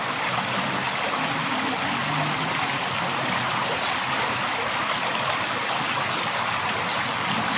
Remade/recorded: recorded